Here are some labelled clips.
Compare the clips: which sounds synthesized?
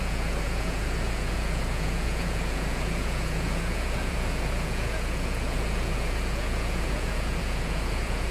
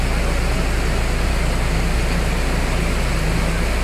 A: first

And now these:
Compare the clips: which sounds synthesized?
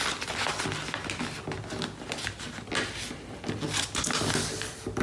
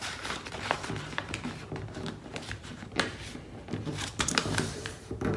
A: second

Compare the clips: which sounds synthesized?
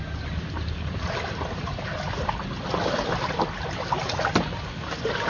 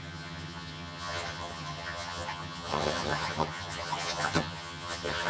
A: second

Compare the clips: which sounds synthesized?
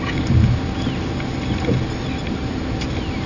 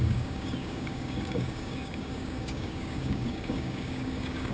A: second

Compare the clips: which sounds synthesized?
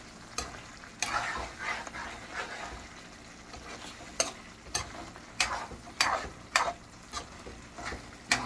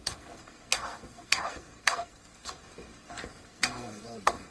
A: second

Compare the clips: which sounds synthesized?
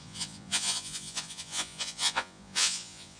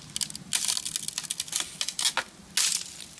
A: first